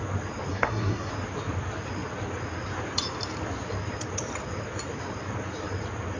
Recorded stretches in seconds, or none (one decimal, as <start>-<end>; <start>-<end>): 0.0-0.5; 1.1-6.2